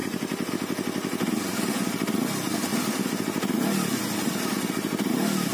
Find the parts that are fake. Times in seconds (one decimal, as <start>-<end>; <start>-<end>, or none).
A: none